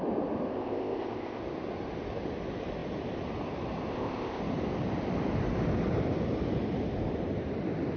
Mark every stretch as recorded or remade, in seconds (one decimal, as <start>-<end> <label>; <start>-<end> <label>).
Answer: 0.0-0.5 recorded; 0.5-1.4 remade; 1.4-3.9 recorded; 3.9-4.4 remade; 4.4-8.0 recorded